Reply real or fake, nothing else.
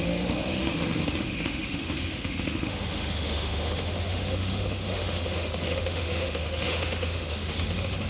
fake